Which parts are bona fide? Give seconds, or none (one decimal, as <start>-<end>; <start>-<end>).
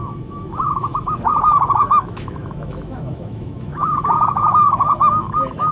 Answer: none